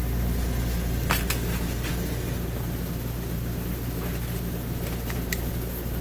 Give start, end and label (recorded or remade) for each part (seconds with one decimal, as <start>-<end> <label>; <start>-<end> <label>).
0.0-6.0 recorded